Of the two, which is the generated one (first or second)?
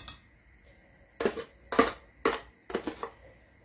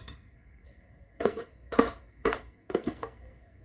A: second